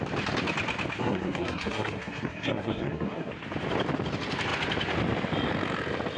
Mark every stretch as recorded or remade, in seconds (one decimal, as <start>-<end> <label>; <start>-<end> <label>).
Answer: 0.0-1.0 recorded; 1.0-3.3 remade; 3.3-6.2 recorded